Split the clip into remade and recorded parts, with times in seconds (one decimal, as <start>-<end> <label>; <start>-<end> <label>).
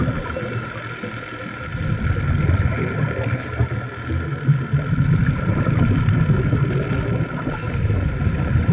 0.0-8.7 recorded